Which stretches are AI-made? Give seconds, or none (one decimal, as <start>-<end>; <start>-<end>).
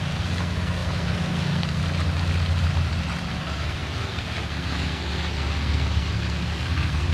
0.0-1.8; 3.3-7.1